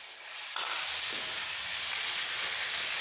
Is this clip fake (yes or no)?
no